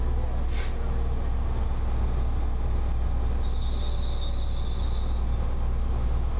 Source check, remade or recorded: recorded